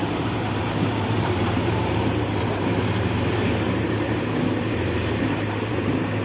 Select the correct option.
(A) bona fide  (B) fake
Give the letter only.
B